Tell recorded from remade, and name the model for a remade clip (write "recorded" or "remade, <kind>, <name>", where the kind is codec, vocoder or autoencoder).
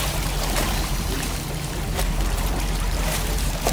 remade, vocoder, BigVGAN v2